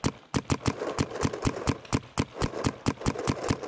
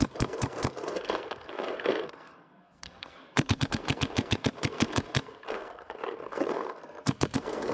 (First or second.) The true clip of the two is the first